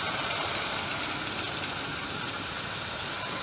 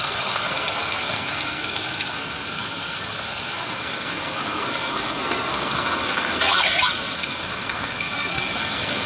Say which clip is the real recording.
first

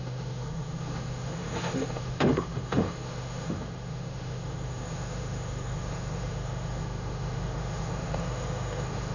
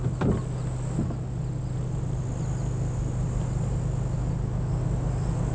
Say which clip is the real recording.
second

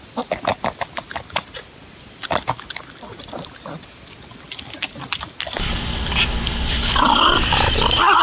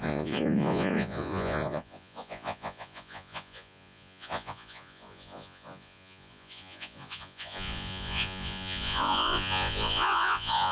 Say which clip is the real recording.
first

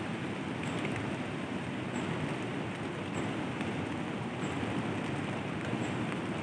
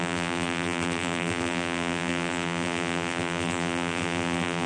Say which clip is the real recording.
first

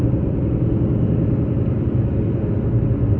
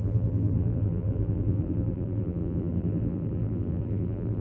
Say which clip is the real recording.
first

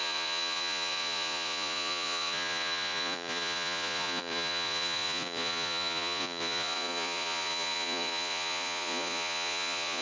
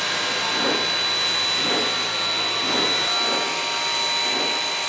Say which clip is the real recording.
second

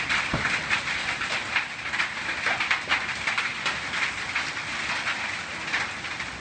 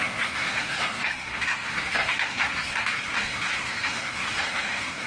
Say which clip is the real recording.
first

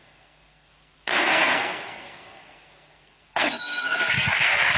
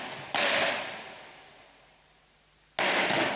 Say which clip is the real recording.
second